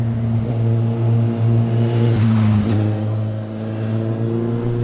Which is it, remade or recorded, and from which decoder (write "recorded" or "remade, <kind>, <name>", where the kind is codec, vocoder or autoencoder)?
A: recorded